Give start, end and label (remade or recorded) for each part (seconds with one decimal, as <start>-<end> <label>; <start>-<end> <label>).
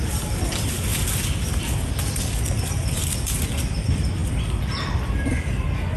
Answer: 0.0-6.0 recorded